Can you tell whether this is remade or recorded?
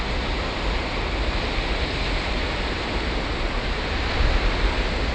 recorded